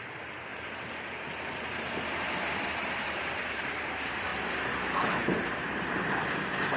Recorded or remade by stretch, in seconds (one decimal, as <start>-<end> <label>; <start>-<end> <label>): 0.0-0.5 recorded; 0.5-1.9 remade; 1.9-2.8 recorded; 2.8-3.8 remade; 3.8-4.3 recorded; 4.3-6.3 remade; 6.3-6.8 recorded

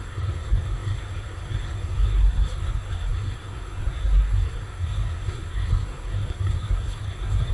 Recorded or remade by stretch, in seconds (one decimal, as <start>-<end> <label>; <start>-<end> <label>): 0.0-7.5 remade

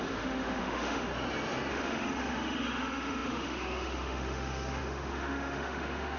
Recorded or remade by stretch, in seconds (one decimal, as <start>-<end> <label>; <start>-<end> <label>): 0.0-1.1 remade; 1.1-1.7 recorded; 1.7-6.2 remade

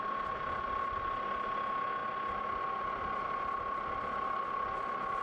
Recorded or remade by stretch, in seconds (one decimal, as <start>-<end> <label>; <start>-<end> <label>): 0.0-5.2 recorded

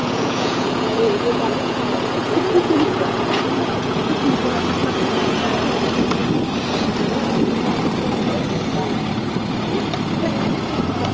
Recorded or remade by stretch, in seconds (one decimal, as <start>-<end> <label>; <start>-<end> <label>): 0.0-4.1 remade; 4.1-4.8 recorded; 4.8-5.6 remade; 5.6-11.1 recorded

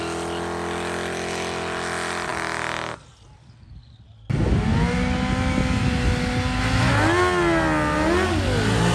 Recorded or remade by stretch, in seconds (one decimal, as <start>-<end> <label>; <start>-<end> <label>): 0.0-8.9 recorded

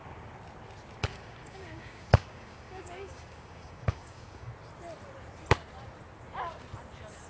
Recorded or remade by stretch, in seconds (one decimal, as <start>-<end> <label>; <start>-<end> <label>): 0.0-1.1 recorded; 1.1-4.5 remade; 4.5-7.3 recorded